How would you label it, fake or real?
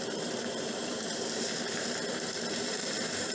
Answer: fake